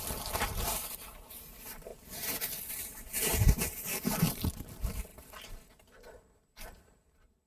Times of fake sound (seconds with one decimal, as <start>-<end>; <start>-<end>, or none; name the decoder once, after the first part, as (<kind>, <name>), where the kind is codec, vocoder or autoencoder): 0.0-1.9 (vocoder, BigVGAN v2); 2.7-7.5